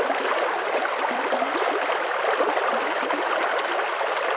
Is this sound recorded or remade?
recorded